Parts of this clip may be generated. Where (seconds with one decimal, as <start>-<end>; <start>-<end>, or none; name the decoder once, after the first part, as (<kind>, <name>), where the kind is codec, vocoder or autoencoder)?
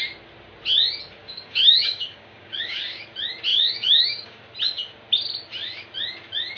1.2-3.0 (codec, DAC); 3.5-4.4